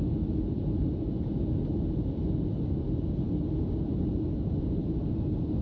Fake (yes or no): no